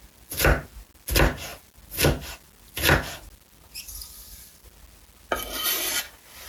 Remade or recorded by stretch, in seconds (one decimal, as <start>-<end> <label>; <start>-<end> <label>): 0.0-6.5 recorded